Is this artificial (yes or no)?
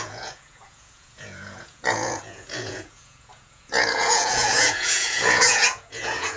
yes